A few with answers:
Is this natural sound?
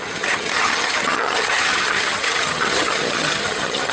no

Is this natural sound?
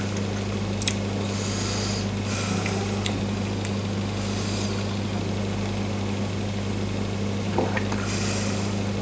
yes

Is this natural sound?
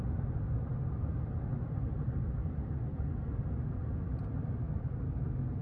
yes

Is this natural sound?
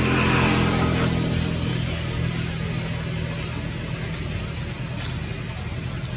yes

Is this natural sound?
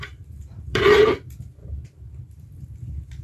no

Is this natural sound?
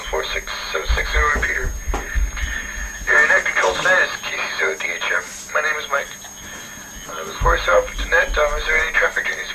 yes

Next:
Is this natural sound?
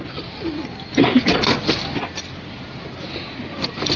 yes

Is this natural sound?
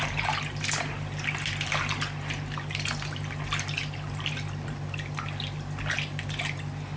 yes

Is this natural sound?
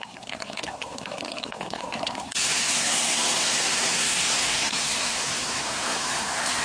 no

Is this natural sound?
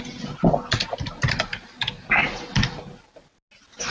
yes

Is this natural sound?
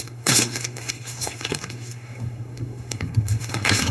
no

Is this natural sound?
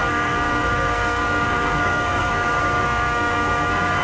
no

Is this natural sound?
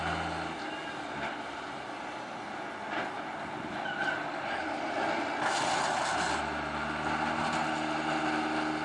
yes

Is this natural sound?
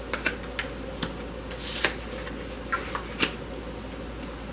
yes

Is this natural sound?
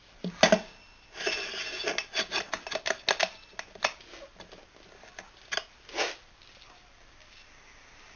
yes